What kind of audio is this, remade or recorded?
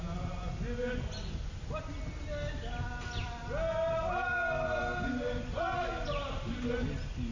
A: recorded